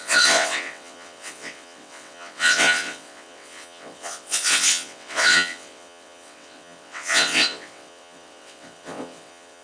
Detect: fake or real fake